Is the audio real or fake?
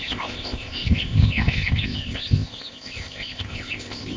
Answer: fake